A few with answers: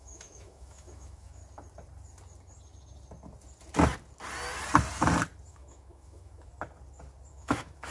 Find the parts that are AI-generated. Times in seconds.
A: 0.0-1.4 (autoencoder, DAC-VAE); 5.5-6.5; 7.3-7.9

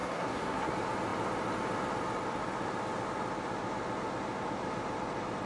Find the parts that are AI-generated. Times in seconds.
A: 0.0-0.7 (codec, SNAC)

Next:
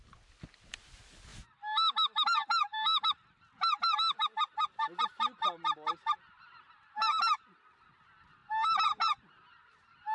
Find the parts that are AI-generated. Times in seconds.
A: none